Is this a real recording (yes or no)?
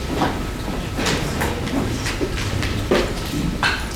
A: yes